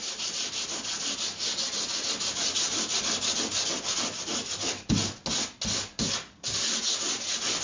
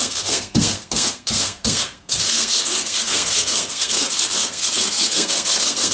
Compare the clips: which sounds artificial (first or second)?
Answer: second